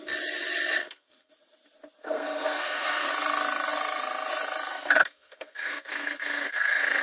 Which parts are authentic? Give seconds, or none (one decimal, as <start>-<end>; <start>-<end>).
0.0-0.8; 1.3-2.0; 3.1-4.7